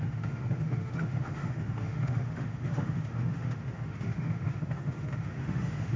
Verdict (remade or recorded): remade